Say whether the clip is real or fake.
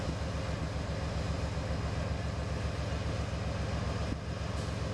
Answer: real